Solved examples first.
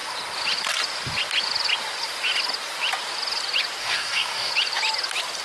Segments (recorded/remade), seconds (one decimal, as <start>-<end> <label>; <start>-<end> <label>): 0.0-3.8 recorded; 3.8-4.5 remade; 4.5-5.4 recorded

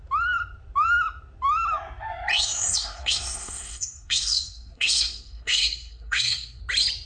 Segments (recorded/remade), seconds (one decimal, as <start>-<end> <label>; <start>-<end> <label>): 0.0-2.3 recorded; 2.3-6.6 remade; 6.6-7.1 recorded

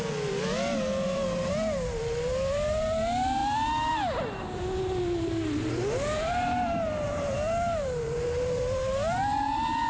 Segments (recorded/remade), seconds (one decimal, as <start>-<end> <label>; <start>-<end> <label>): 0.0-3.4 remade; 3.4-3.9 recorded; 3.9-9.9 remade

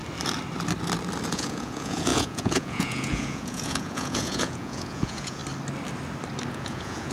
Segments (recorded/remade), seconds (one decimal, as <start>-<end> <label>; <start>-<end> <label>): 0.0-1.3 recorded; 1.3-5.4 remade; 5.4-6.5 recorded; 6.5-7.1 remade

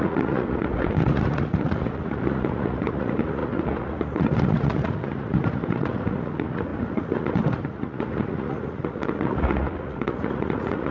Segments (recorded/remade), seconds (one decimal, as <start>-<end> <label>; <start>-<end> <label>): 0.0-10.9 remade

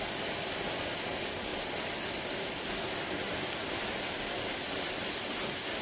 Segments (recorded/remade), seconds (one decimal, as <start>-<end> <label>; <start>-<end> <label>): 0.0-5.8 recorded